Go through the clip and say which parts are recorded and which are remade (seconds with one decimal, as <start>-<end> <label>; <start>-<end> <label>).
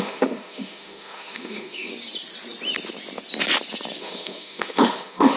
0.0-1.9 remade; 1.9-4.0 recorded; 4.0-5.4 remade